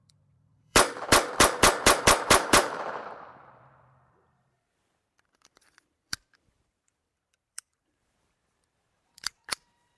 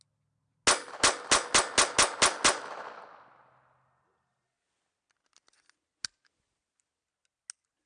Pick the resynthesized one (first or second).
first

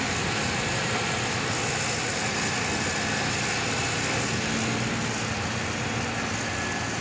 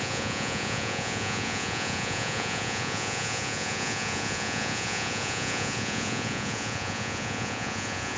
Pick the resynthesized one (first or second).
second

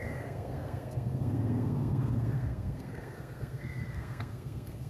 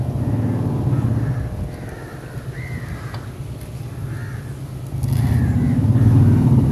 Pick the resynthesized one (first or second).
first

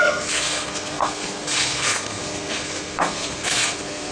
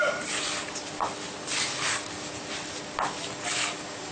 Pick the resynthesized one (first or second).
first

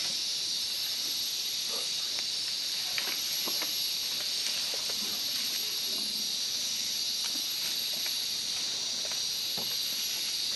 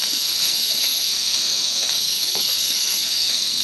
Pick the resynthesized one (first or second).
second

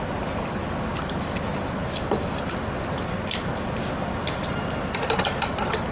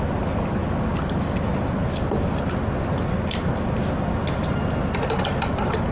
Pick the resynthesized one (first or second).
first